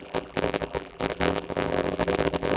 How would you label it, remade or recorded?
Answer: remade